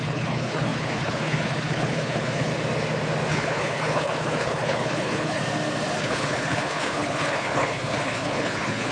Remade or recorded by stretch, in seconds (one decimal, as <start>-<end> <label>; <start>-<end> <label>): 0.0-2.5 remade; 2.5-3.3 recorded; 3.3-5.4 remade; 5.4-6.0 recorded; 6.0-8.9 remade